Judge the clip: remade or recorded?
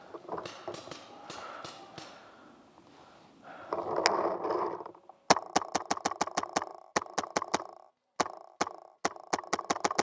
recorded